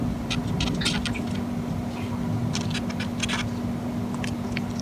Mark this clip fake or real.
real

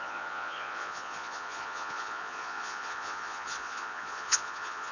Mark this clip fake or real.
fake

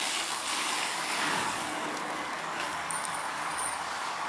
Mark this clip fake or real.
fake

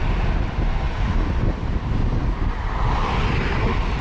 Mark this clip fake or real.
real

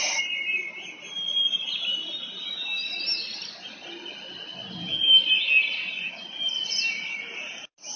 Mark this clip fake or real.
real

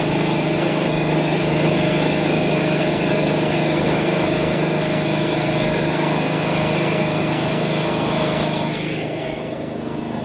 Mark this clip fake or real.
fake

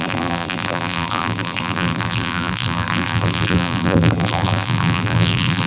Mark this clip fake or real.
fake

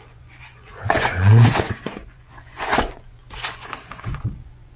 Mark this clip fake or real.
fake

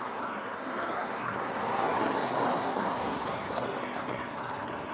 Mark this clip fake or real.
fake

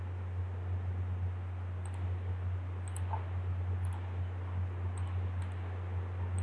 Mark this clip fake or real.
real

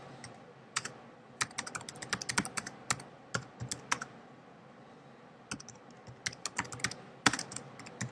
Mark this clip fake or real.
real